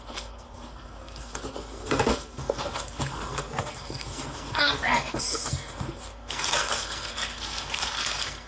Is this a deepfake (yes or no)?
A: yes